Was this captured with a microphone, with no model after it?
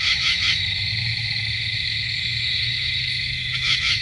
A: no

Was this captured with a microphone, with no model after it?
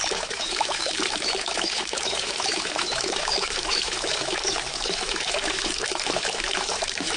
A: no